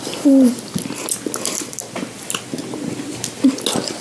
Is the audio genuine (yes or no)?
yes